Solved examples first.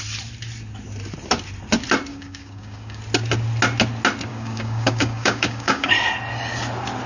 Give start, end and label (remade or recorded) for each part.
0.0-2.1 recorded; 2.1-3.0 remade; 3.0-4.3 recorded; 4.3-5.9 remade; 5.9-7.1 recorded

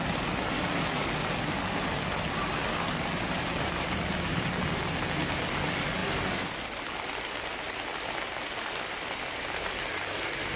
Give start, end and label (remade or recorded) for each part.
0.0-10.6 recorded

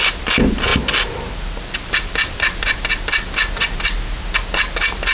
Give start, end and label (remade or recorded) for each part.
0.0-5.1 recorded